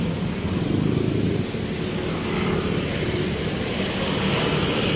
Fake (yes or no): no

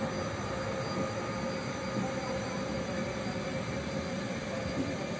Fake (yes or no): no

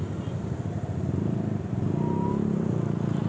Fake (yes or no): no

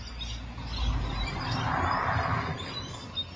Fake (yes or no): no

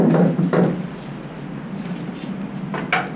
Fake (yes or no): no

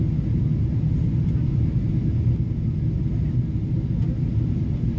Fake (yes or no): no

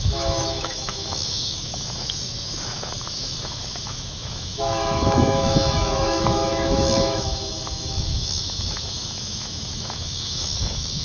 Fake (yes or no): yes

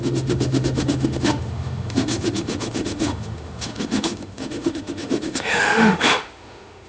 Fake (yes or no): yes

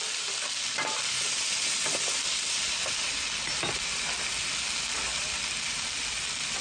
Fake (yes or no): no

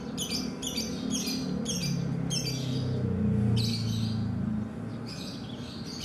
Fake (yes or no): no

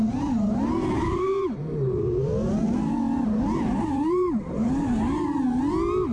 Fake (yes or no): no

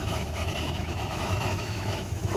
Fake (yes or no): yes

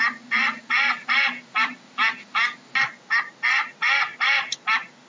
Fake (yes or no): no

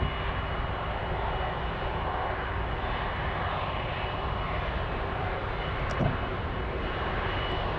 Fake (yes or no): no